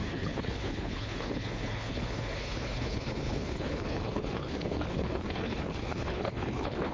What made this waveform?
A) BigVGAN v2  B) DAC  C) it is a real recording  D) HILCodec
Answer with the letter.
D